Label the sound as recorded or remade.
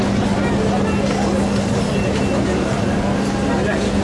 recorded